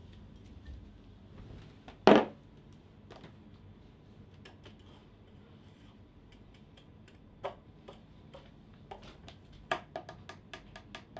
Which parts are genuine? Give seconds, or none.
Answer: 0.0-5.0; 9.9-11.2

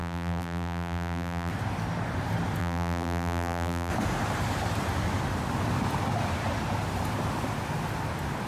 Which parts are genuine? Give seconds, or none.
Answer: 1.5-2.6; 3.9-8.5

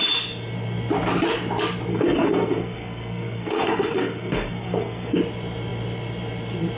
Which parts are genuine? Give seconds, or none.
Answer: 0.0-1.9; 5.2-6.8

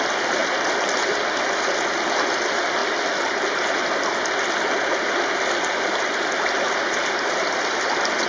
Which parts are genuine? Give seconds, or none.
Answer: 0.0-8.3

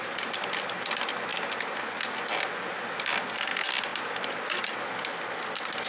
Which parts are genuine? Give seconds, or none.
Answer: 0.0-5.9

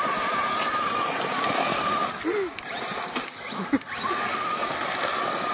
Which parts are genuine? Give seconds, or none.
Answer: 2.0-5.5